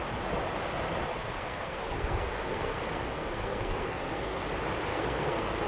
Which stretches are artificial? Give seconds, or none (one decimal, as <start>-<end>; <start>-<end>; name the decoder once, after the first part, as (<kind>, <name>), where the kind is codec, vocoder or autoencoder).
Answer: 1.1-4.5 (codec, SNAC); 4.9-5.7